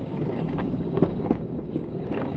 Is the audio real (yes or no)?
no